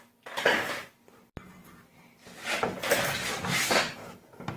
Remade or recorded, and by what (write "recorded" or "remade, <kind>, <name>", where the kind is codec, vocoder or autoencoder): remade, vocoder, BigVGAN v2